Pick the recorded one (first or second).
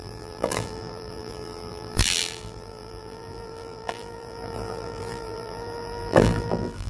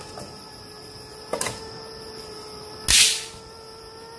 second